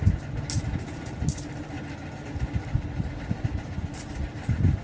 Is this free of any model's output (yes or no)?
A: yes